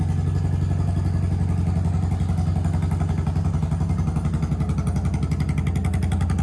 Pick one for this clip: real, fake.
real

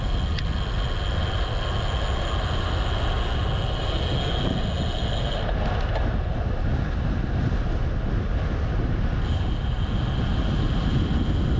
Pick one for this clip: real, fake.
real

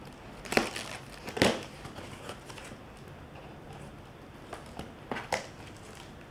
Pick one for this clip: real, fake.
real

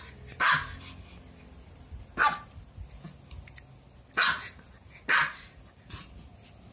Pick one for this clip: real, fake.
real